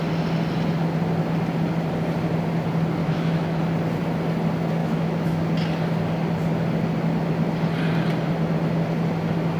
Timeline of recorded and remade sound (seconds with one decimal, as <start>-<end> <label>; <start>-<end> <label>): 0.0-3.0 recorded; 3.0-3.6 remade; 3.6-4.8 recorded; 4.8-5.4 remade; 5.4-9.6 recorded